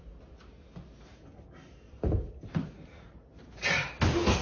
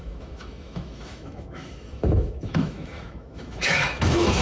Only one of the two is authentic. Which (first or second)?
first